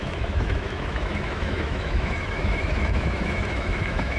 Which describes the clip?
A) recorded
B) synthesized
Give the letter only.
B